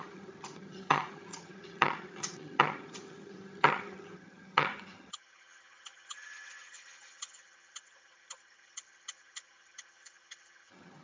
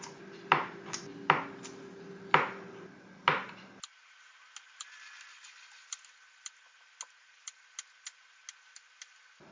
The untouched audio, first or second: second